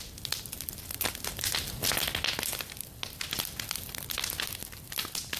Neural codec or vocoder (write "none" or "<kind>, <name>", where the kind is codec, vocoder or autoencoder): none